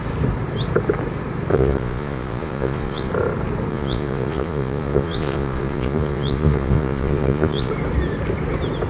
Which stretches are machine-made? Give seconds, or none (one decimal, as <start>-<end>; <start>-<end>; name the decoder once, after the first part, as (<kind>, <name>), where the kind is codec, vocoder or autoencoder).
1.5-3.1 (vocoder, Vocos); 3.7-7.7